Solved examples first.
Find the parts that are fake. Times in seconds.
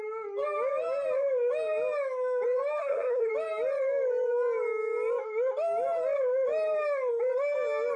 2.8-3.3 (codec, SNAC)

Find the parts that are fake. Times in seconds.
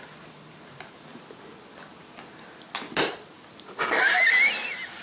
0.0-1.1 (vocoder, BigVGAN v2); 4.1-5.0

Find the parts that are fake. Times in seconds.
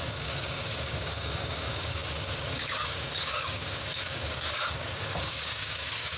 0.0-6.2 (codec, DAC)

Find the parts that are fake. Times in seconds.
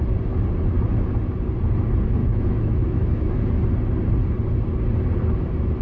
2.2-3.4 (autoencoder, DAC-VAE)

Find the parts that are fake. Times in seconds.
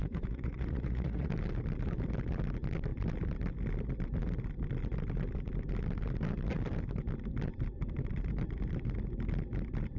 0.0-1.3 (vocoder, Vocos)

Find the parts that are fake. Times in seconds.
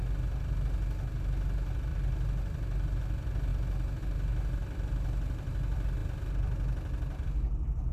1.9-3.0 (vocoder, BigVGAN v2); 4.6-5.5; 6.0-7.9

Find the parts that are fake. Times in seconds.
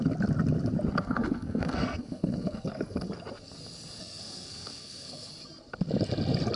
1.0-3.1 (codec, SNAC); 4.0-5.3